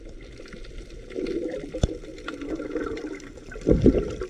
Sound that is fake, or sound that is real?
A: real